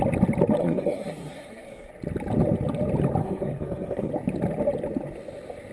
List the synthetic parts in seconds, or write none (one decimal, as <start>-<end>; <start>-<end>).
0.6-1.9; 3.2-4.1

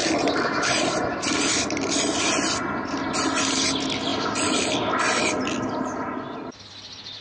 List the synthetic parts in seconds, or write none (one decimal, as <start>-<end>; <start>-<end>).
none

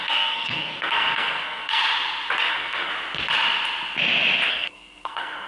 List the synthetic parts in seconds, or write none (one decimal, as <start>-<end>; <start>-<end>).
0.0-1.8; 2.5-2.9; 4.5-5.5